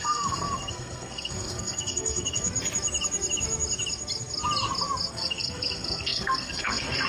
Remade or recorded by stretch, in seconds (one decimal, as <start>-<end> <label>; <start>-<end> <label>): 0.0-2.5 remade; 2.5-5.1 recorded; 5.1-7.1 remade